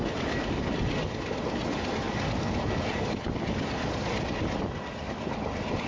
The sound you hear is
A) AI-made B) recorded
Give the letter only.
B